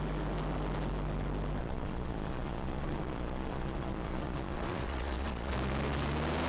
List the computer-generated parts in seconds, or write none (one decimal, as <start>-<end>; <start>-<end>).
1.6-5.5